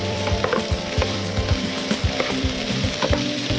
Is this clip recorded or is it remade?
remade